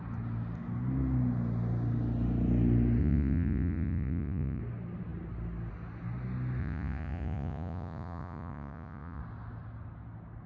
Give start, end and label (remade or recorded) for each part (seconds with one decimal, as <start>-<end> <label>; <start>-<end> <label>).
0.0-3.0 recorded; 3.0-4.6 remade; 4.6-6.6 recorded; 6.6-9.2 remade; 9.2-10.5 recorded